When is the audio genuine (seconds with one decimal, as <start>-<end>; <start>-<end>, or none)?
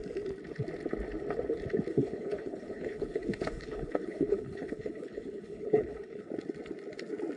0.0-1.9; 6.3-7.4